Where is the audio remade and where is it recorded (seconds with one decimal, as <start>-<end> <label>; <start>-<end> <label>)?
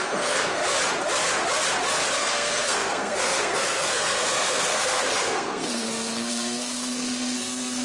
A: 0.0-0.6 remade; 0.6-2.2 recorded; 2.2-7.8 remade